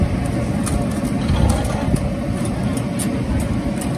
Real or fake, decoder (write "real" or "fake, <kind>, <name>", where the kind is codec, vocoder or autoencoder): real